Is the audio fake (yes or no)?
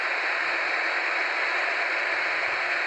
no